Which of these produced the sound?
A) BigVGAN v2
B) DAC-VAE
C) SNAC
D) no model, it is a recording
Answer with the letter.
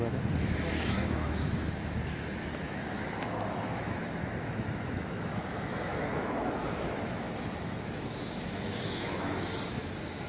B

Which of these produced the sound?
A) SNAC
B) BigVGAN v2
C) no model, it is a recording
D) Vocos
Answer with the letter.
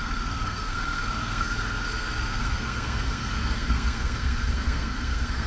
A